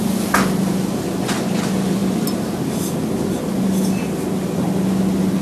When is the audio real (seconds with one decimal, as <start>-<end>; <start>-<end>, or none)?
0.0-5.4